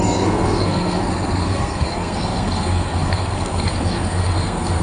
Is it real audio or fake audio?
fake